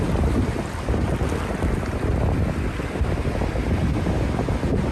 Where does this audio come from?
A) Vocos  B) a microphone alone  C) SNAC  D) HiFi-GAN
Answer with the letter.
B